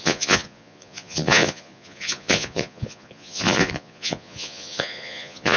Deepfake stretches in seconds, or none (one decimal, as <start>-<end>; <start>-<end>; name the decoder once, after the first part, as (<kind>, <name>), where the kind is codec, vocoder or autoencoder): 0.0-5.6 (vocoder, Vocos)